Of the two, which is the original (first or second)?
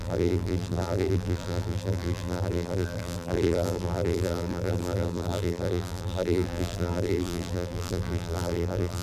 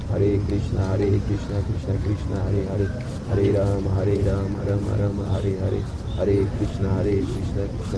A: second